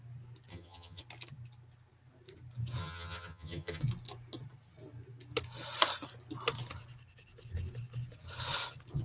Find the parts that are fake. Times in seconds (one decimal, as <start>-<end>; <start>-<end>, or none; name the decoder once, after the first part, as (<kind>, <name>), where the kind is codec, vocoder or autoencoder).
0.5-1.0 (vocoder, HiFi-GAN); 2.8-3.8